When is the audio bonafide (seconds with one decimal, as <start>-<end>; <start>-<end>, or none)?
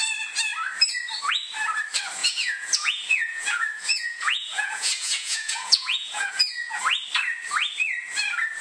0.0-2.2; 6.8-8.6